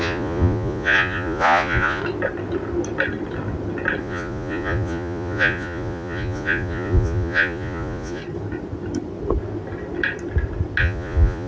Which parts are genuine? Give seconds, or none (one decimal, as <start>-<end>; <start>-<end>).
2.0-4.0; 8.2-10.8